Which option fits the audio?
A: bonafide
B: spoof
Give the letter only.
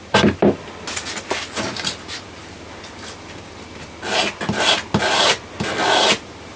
A